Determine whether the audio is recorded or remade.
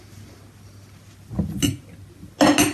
recorded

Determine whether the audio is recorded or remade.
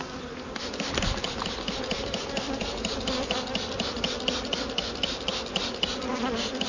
recorded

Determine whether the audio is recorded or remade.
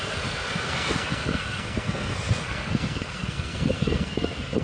remade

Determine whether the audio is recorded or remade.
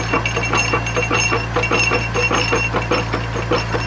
recorded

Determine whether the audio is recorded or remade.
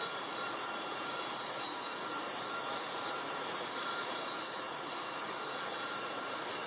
remade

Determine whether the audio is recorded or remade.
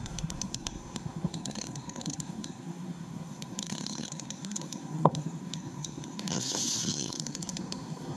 remade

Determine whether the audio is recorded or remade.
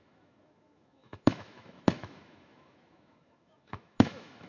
remade